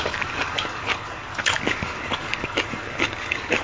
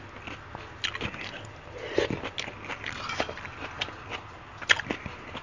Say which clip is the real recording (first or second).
second